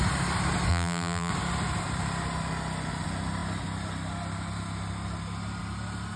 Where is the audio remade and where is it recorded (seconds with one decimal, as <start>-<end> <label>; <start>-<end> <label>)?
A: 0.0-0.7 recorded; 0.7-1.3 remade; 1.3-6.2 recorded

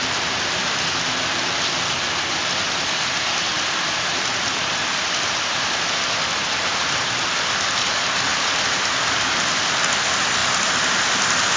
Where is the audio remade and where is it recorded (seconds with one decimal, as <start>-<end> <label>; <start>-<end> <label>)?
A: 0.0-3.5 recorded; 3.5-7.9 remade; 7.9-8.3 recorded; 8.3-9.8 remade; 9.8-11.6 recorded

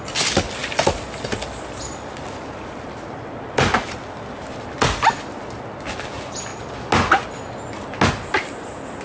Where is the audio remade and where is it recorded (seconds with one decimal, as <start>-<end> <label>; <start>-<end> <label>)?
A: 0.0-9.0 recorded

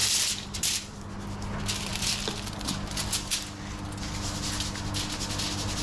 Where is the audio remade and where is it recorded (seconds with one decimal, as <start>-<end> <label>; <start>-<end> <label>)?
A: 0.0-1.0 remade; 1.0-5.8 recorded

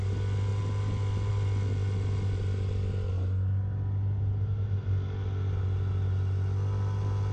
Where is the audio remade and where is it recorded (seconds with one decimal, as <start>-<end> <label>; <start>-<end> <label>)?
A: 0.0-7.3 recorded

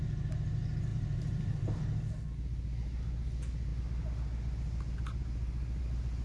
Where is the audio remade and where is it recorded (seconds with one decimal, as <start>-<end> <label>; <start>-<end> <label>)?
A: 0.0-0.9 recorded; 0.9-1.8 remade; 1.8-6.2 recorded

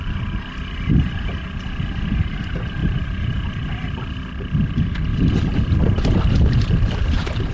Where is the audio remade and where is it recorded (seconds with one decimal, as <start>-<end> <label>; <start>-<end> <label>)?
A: 0.0-2.8 recorded; 2.8-3.7 remade; 3.7-5.1 recorded; 5.1-7.5 remade

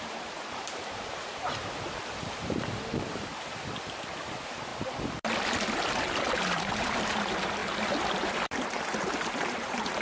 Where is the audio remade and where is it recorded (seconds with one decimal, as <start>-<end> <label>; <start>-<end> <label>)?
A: 0.0-4.7 remade; 4.7-6.5 recorded; 6.5-7.6 remade; 7.6-9.1 recorded; 9.1-10.0 remade